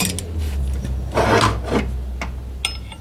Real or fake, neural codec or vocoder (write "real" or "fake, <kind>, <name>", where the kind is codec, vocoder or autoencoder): real